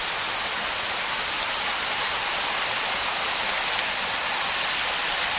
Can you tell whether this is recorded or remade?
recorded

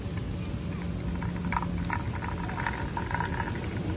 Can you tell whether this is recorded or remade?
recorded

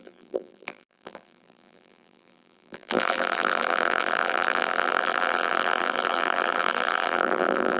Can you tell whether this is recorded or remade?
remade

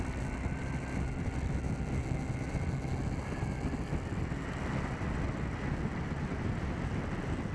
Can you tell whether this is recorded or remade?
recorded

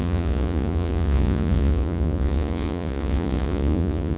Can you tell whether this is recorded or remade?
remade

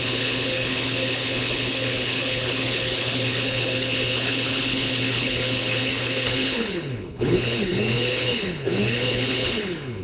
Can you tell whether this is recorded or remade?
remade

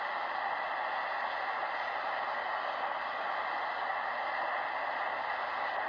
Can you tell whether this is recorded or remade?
recorded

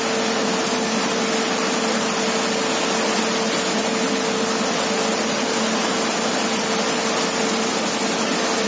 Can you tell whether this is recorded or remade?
recorded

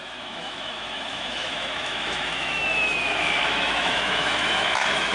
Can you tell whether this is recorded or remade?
remade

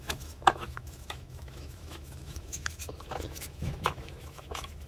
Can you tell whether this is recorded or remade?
remade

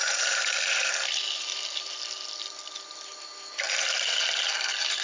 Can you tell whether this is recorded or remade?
recorded